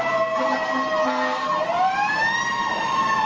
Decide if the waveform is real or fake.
real